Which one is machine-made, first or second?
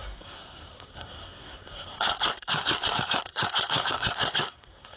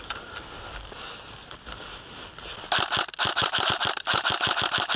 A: first